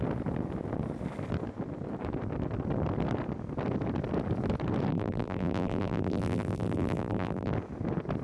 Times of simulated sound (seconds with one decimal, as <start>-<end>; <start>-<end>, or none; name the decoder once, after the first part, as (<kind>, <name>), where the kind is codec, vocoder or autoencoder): 4.9-7.5 (vocoder, BigVGAN v2)